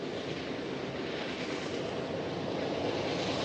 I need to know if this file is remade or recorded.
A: recorded